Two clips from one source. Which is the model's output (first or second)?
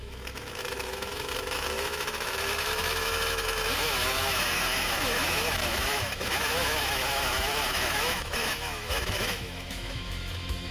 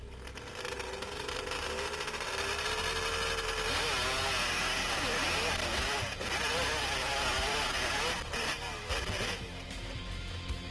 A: first